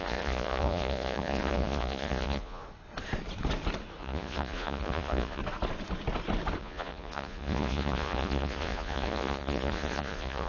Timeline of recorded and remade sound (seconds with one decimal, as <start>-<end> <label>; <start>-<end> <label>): 0.0-2.6 remade; 2.6-4.0 recorded; 4.0-5.4 remade; 5.4-6.6 recorded; 6.6-10.5 remade